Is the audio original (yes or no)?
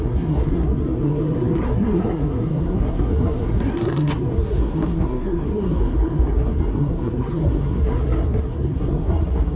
no